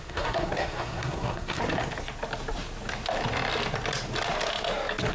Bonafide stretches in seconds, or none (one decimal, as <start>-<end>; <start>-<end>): 1.6-5.1